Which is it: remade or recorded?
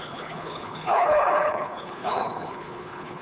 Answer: remade